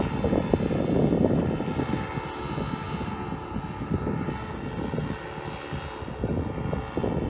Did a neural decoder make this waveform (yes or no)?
no